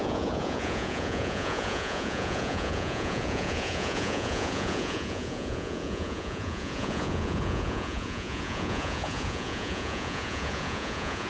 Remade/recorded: remade